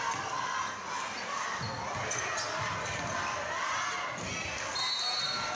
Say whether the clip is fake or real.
real